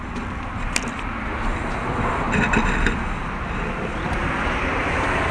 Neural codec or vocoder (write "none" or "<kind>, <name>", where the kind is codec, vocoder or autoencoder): none